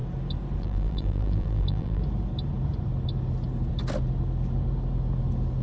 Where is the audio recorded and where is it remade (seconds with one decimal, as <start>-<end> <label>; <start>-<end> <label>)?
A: 0.0-0.6 recorded; 0.6-2.0 remade; 2.0-5.6 recorded